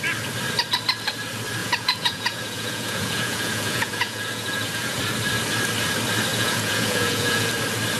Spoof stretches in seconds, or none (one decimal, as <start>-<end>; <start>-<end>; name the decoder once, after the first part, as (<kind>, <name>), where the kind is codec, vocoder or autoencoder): 1.6-5.0 (vocoder, Vocos); 6.3-7.5